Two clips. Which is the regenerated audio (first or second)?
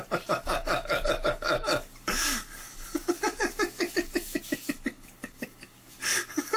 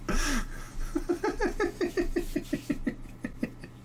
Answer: first